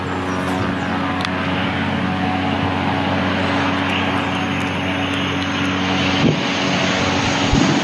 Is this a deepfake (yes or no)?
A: no